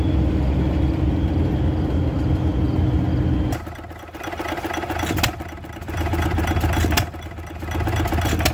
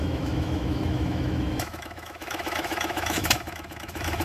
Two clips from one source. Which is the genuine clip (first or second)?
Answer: first